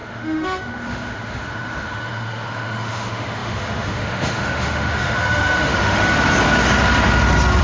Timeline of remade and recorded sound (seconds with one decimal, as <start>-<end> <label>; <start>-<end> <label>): 0.0-6.1 remade; 6.1-7.6 recorded